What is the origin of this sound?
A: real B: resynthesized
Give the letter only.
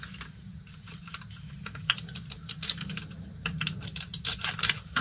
B